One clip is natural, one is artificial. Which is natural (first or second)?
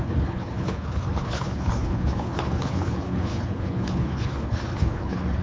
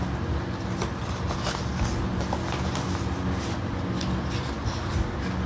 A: second